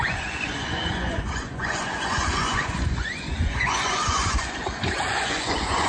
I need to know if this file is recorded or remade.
remade